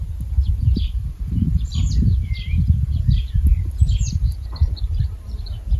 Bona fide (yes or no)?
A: no